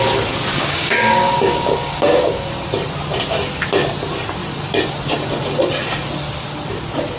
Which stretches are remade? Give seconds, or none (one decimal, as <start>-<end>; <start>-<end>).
0.5-2.5